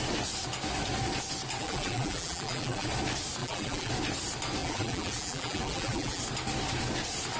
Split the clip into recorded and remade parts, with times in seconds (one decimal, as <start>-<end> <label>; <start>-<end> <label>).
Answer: 0.0-1.6 recorded; 1.6-2.9 remade; 2.9-3.4 recorded; 3.4-3.9 remade; 3.9-4.6 recorded; 4.6-6.2 remade; 6.2-7.4 recorded